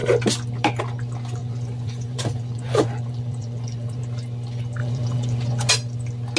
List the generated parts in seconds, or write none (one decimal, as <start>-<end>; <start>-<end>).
1.4-4.0; 4.8-5.7